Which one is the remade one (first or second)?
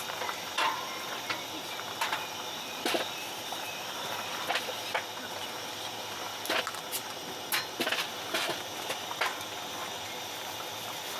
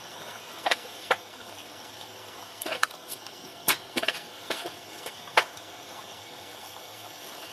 second